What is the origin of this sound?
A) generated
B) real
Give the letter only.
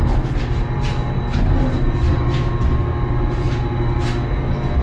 B